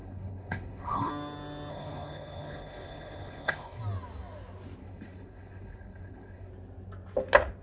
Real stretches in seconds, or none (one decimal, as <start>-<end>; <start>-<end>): 1.1-1.7; 3.8-4.8; 6.5-7.6